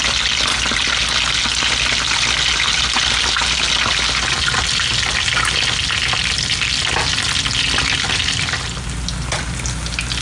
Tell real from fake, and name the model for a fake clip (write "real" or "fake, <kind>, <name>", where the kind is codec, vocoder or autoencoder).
real